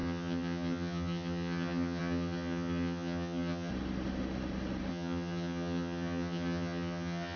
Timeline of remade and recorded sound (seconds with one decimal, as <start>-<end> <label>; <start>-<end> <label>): 0.0-3.7 remade; 3.7-4.9 recorded; 4.9-7.4 remade